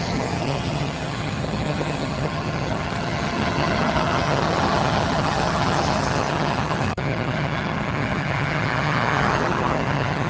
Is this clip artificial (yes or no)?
yes